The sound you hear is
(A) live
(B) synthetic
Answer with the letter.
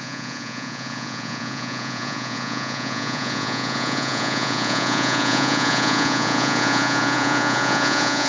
B